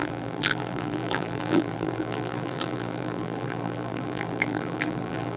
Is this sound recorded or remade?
remade